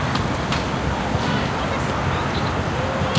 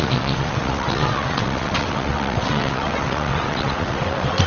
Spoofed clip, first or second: second